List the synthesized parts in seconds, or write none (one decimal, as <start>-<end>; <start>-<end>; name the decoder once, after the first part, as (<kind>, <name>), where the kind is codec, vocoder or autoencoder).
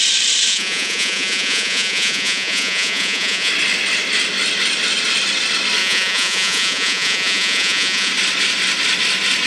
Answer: 0.5-3.5 (vocoder, Vocos); 5.8-8.1